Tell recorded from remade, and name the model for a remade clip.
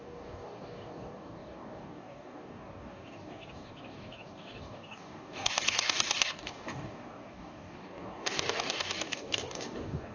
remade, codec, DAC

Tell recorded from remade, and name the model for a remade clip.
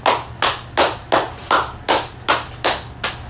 recorded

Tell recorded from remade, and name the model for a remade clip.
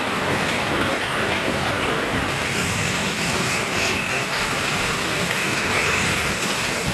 remade, codec, DAC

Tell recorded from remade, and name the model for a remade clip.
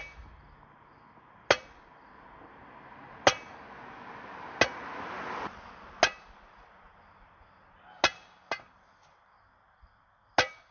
recorded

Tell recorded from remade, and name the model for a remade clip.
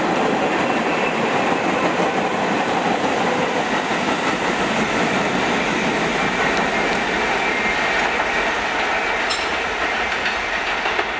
recorded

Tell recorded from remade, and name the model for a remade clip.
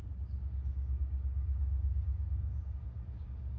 remade, codec, DAC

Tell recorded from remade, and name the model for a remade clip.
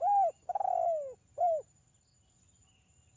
recorded